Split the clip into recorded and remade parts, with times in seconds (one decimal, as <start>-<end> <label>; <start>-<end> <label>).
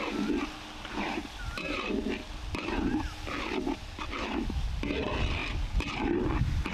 0.0-6.7 recorded